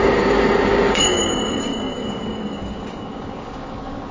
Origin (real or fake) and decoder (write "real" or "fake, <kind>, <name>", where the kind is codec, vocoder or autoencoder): fake, codec, DAC